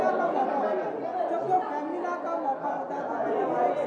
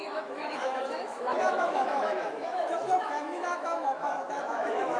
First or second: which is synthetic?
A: second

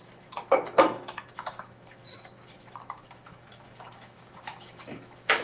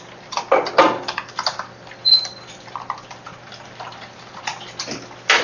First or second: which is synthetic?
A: first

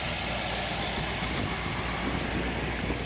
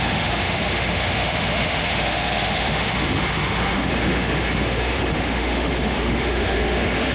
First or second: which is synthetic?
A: second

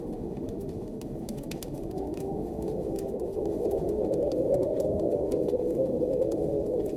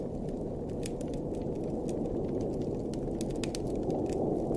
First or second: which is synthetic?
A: first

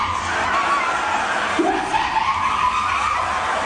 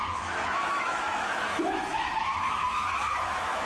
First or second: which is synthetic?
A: second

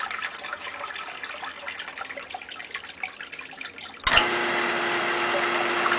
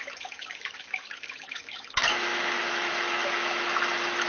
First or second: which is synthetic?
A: second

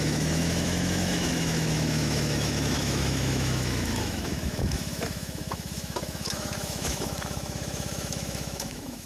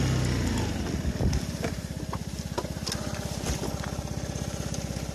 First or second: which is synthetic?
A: first